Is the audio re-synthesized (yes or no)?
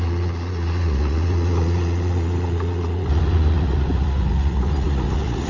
yes